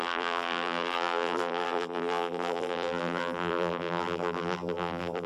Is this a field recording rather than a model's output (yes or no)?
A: no